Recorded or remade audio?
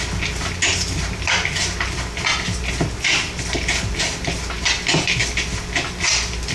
recorded